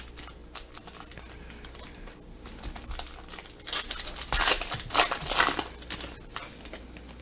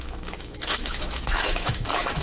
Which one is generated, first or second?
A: second